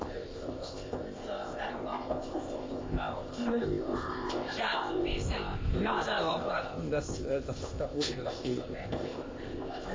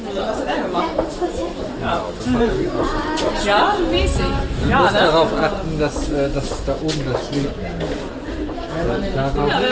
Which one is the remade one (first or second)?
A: first